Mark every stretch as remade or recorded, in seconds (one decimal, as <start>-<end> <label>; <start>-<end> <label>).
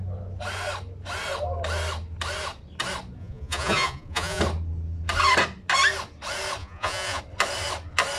0.0-3.2 recorded; 3.2-4.4 remade; 4.4-6.6 recorded; 6.6-7.2 remade; 7.2-8.2 recorded